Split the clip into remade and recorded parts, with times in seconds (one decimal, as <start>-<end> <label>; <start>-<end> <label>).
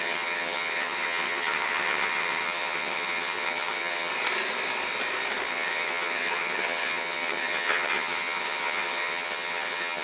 0.0-4.1 remade; 4.1-5.5 recorded; 5.5-10.0 remade